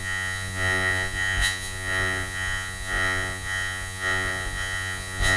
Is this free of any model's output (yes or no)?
no